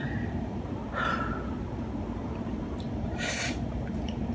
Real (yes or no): no